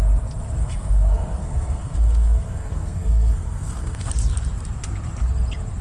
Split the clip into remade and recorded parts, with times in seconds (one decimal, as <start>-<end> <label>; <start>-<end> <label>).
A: 0.0-0.6 recorded; 0.6-4.1 remade; 4.1-5.8 recorded